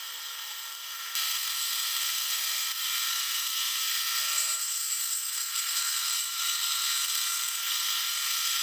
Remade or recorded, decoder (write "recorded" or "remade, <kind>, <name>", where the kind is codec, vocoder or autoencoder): remade, codec, SNAC